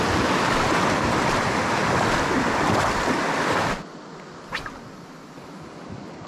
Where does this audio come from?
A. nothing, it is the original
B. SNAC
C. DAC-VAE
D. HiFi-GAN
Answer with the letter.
A